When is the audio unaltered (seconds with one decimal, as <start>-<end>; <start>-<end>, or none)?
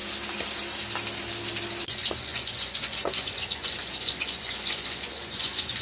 0.0-1.8